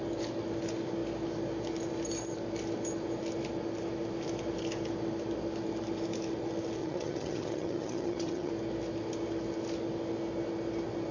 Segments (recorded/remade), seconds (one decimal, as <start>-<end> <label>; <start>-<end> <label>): 0.0-6.8 recorded; 6.8-8.5 remade; 8.5-11.1 recorded